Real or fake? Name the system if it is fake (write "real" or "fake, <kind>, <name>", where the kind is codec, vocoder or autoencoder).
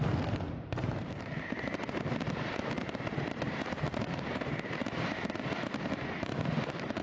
fake, vocoder, BigVGAN v2